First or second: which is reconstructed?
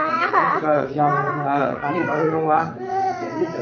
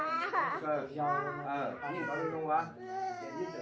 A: first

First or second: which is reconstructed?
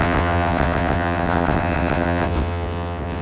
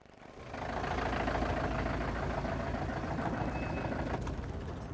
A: first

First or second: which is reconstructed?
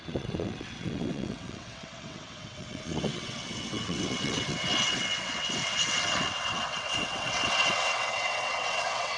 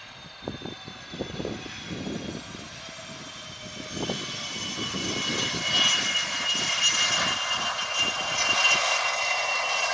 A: first